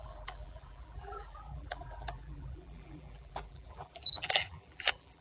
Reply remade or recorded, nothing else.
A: remade